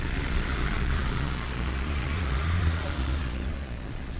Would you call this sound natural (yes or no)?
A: no